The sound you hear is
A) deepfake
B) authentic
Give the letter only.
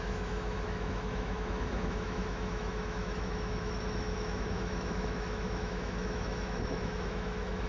A